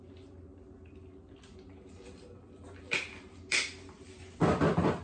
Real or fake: real